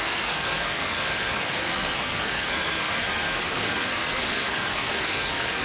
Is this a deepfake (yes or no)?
yes